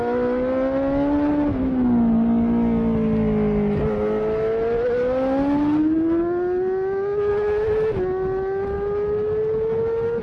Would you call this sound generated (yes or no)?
no